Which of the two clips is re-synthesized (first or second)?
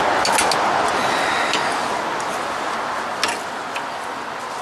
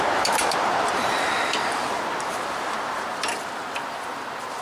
second